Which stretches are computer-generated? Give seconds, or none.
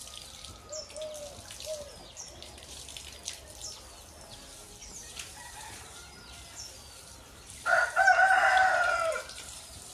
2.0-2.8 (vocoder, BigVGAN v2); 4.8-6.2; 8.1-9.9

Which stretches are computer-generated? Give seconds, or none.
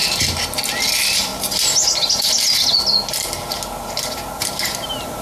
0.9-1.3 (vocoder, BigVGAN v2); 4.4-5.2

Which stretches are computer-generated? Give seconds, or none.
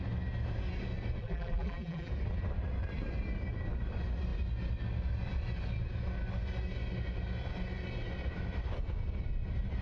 1.2-2.1 (vocoder, BigVGAN v2)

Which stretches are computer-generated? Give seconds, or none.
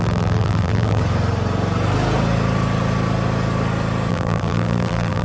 0.0-1.0 (vocoder, BigVGAN v2); 4.1-5.2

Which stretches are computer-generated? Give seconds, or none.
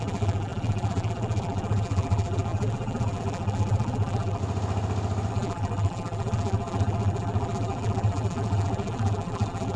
0.0-4.4 (vocoder, BigVGAN v2); 5.3-9.8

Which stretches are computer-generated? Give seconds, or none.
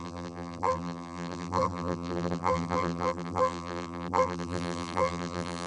0.0-5.7 (vocoder, BigVGAN v2)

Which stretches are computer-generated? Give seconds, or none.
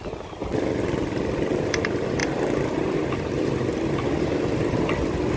none